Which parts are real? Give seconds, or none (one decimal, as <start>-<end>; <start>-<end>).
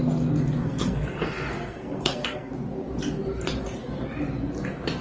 0.0-0.6; 2.5-5.0